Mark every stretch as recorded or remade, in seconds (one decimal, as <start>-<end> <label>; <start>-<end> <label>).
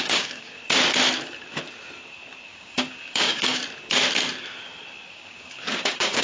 0.0-0.6 remade; 0.6-2.5 recorded; 2.5-3.6 remade; 3.6-5.1 recorded; 5.1-6.2 remade